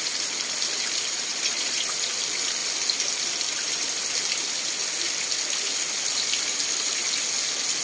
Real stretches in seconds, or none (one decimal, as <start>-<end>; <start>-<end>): 0.0-1.3; 1.8-7.8